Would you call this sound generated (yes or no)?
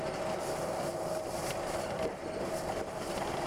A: no